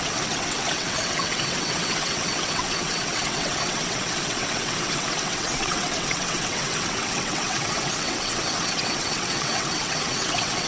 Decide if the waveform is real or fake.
fake